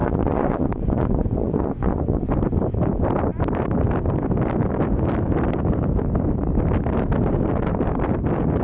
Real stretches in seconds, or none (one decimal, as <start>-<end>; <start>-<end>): 2.3-8.6